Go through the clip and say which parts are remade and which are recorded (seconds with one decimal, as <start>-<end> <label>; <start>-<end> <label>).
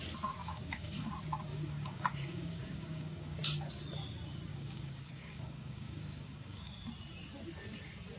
0.0-0.4 recorded; 0.4-1.1 remade; 1.1-1.5 recorded; 1.5-3.4 remade; 3.4-4.5 recorded; 4.5-6.8 remade; 6.8-8.2 recorded